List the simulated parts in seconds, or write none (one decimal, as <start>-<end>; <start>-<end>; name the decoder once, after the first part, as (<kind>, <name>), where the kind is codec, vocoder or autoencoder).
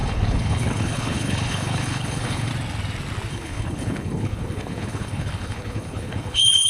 0.0-2.5 (codec, HILCodec); 3.3-6.7